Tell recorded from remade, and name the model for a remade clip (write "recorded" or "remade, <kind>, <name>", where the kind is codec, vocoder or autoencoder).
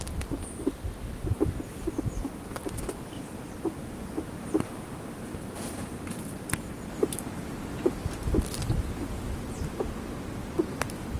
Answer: recorded